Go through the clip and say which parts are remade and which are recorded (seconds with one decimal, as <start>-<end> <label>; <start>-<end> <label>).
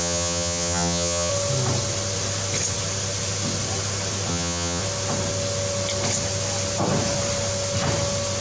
0.0-1.3 remade; 1.3-4.3 recorded; 4.3-4.8 remade; 4.8-8.4 recorded